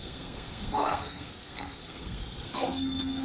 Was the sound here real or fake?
fake